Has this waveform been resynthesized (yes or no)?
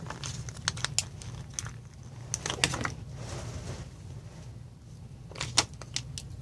no